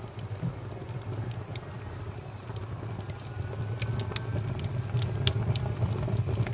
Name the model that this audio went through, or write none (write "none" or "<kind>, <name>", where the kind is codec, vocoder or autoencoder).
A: none